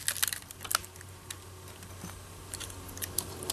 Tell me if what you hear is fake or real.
real